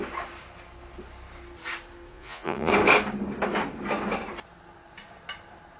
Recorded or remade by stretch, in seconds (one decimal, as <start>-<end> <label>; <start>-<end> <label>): 0.0-2.1 recorded; 2.1-2.7 remade; 2.7-5.8 recorded